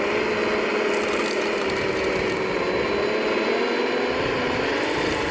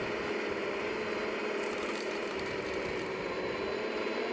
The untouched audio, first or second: first